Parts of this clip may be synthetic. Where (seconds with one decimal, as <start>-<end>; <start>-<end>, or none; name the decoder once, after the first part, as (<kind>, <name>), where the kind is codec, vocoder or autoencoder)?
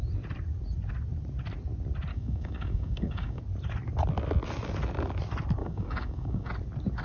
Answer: 2.1-3.4 (codec, DAC); 5.6-6.5